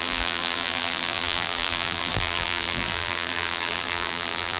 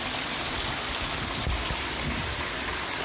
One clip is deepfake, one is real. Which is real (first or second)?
second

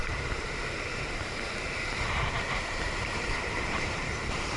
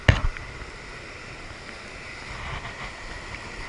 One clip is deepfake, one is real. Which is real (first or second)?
second